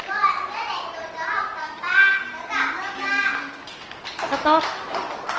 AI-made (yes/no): no